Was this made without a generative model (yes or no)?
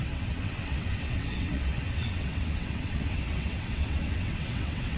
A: no